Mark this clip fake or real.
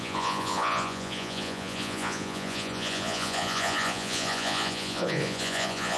fake